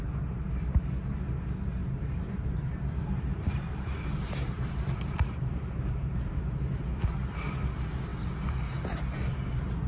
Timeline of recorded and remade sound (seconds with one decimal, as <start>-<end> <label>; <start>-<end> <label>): 0.0-1.8 recorded; 1.8-6.4 remade; 6.4-9.9 recorded